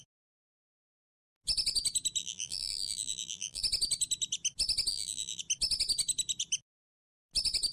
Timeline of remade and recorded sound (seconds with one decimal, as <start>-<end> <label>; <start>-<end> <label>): 0.0-2.2 recorded; 2.2-3.6 remade; 3.6-4.9 recorded; 4.9-5.4 remade; 5.4-7.7 recorded